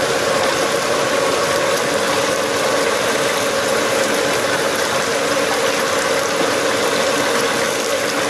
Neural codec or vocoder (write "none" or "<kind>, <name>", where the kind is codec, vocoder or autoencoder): none